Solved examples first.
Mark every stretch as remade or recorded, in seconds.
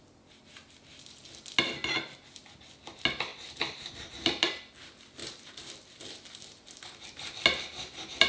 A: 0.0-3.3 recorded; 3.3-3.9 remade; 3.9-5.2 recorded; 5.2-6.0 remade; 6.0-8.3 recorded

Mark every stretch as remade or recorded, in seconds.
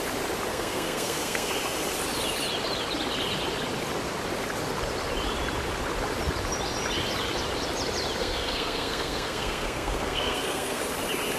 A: 0.0-0.5 recorded; 0.5-1.5 remade; 1.5-8.2 recorded; 8.2-10.8 remade; 10.8-11.4 recorded